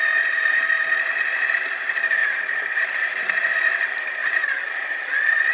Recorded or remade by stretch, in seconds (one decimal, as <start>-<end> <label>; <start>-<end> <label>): 0.0-2.2 remade; 2.2-2.9 recorded; 2.9-5.5 remade